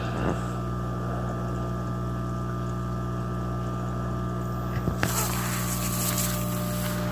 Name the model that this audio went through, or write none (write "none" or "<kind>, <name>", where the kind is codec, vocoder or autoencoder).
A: none